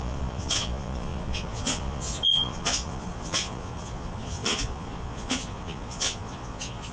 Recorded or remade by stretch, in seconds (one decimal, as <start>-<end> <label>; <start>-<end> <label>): 0.0-6.9 remade